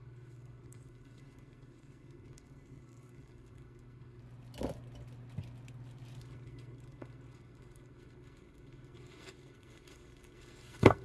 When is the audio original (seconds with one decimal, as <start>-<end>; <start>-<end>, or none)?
4.2-6.2